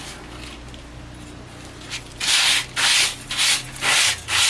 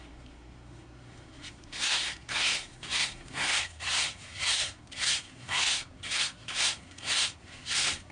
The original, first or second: first